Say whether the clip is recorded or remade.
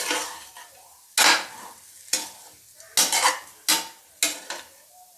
recorded